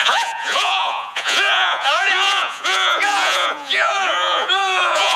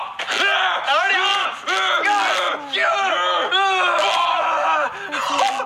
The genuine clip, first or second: second